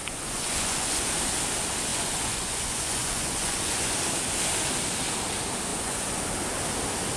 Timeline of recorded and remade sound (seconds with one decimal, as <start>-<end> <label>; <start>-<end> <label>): 0.0-1.1 remade; 1.1-1.9 recorded; 1.9-4.0 remade; 4.0-5.7 recorded; 5.7-6.2 remade; 6.2-7.2 recorded